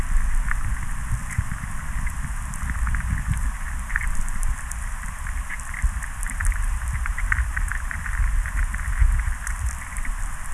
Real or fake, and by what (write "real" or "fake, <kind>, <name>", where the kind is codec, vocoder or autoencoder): real